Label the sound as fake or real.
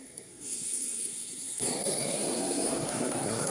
fake